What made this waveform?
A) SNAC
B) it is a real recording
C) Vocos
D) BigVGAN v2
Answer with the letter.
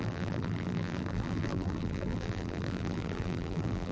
D